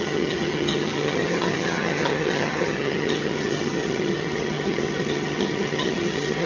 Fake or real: fake